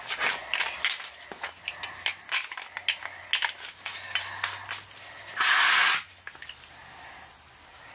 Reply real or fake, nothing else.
real